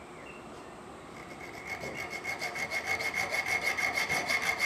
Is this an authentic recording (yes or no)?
yes